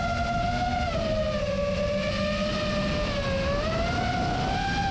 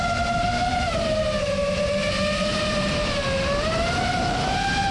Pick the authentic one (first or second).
first